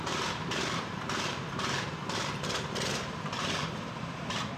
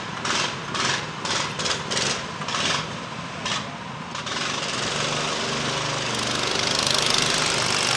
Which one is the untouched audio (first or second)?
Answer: second